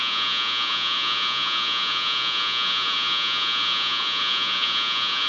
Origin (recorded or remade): remade